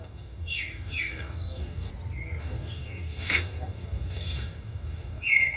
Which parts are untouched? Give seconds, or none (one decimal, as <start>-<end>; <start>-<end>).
1.9-2.4